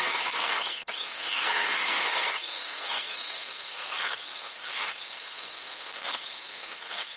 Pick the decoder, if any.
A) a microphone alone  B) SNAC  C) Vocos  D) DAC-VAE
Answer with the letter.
B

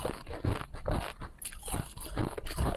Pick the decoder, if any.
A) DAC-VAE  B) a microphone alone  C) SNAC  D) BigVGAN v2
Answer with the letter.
B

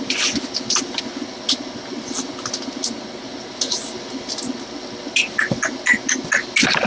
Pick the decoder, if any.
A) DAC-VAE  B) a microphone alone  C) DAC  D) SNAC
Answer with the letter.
B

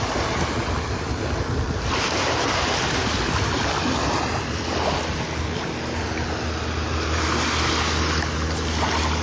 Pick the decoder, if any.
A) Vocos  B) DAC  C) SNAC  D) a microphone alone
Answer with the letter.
D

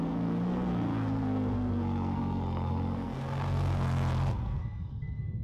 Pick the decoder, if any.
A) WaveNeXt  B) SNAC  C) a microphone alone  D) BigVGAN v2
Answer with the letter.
B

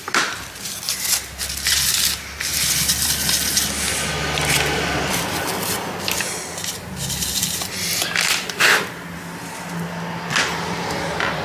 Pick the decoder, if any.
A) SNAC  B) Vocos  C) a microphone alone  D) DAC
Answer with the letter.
C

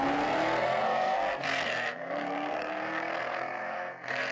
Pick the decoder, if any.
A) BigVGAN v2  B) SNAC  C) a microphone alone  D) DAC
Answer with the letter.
B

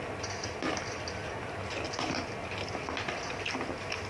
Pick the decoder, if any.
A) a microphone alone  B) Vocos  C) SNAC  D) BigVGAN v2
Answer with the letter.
A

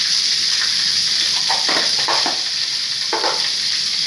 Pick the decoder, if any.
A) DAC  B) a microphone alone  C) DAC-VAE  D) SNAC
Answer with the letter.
B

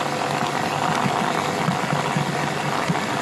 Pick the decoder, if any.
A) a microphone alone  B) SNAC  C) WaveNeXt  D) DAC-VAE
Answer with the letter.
A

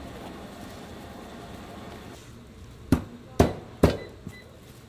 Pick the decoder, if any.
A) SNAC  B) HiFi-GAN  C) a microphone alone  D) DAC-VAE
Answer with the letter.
C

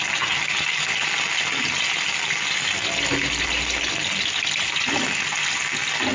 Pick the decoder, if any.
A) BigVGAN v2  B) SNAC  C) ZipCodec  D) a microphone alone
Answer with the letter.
D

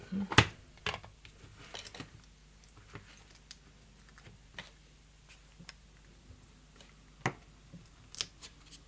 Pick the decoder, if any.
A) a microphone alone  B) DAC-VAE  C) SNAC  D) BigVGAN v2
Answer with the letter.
A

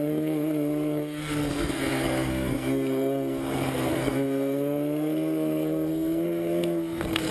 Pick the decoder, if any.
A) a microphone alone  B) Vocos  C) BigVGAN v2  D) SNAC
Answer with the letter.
D